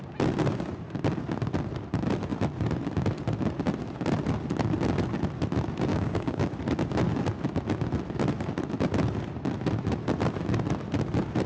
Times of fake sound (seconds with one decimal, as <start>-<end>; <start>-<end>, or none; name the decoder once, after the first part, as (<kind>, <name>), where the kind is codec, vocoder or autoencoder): 5.9-6.5 (codec, DAC)